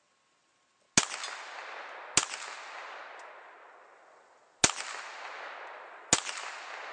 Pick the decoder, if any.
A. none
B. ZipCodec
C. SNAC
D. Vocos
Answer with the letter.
A